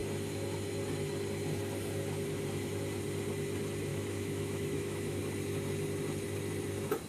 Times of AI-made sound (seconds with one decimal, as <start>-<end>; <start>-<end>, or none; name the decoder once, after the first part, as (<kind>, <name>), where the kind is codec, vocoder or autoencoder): 3.9-5.2 (autoencoder, DAC-VAE)